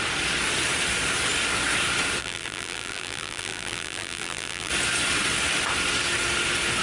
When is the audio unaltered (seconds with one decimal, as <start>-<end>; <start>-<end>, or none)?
0.0-2.2; 4.7-6.8